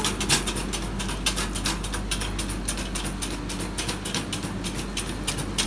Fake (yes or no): no